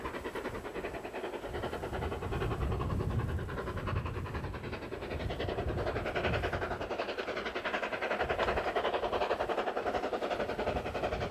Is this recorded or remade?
recorded